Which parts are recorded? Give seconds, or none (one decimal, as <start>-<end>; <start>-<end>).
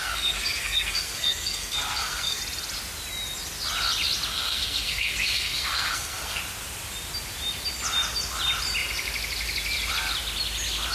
2.4-4.3; 6.4-10.9